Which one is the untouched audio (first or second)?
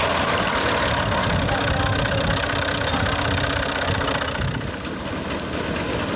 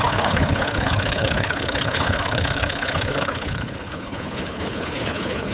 first